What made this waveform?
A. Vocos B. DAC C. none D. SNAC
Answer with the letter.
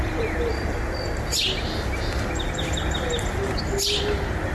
C